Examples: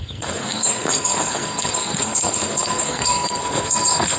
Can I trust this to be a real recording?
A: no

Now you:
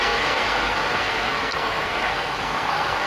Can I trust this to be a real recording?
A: no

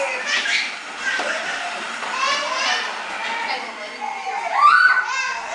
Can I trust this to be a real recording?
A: yes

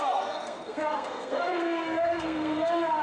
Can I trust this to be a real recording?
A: no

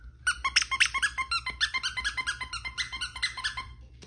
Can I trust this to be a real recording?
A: yes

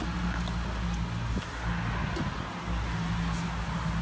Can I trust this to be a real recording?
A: yes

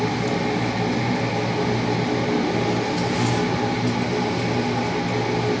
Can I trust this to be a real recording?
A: yes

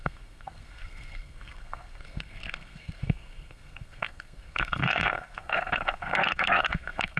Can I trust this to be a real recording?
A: no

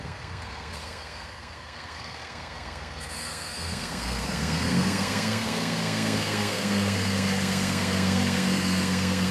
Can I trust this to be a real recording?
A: no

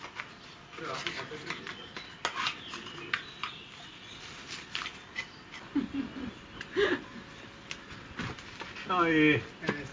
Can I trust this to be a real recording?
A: yes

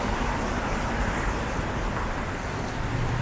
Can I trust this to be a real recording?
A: yes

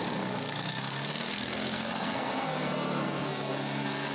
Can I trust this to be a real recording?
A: no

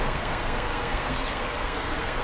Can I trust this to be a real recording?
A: no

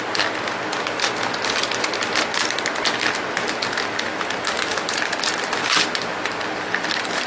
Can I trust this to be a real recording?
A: yes